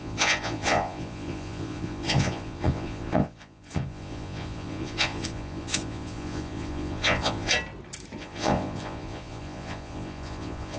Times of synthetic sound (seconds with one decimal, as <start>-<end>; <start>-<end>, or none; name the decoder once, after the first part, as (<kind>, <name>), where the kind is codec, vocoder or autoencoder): 0.0-7.5 (vocoder, Vocos); 8.2-10.8